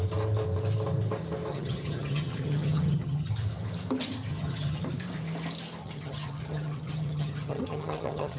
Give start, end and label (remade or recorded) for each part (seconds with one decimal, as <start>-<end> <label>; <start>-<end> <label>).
0.0-1.5 recorded; 1.5-3.3 remade; 3.3-4.3 recorded; 4.3-4.8 remade; 4.8-5.8 recorded; 5.8-8.4 remade